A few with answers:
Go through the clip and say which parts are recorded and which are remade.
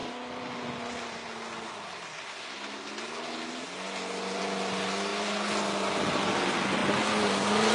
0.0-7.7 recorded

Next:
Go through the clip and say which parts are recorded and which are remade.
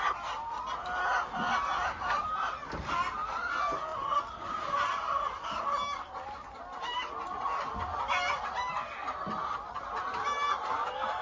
0.0-11.2 recorded